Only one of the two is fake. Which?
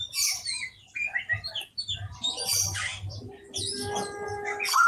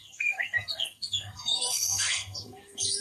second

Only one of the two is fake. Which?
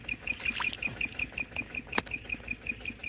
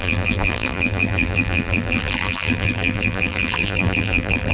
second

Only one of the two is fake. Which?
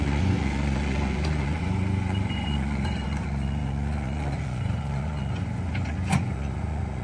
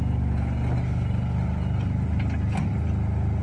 first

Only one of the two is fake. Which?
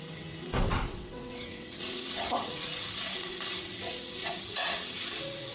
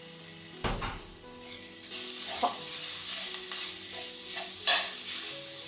first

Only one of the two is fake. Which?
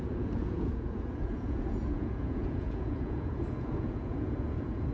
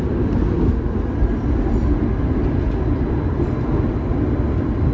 first